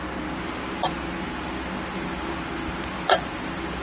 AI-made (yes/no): no